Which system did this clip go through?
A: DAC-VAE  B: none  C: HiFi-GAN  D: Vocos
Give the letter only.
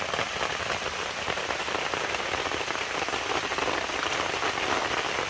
B